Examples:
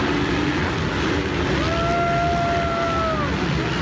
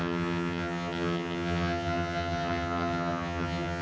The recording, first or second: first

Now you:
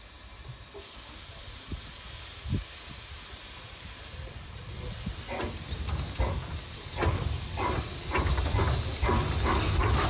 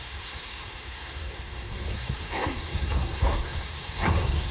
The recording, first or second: first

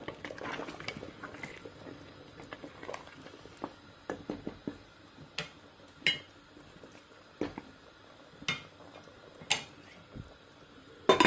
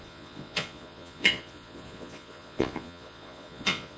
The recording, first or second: first